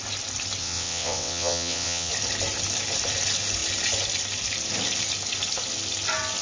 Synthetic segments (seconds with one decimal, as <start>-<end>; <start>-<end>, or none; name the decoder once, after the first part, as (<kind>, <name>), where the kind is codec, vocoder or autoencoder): 0.6-2.1 (vocoder, WaveNeXt)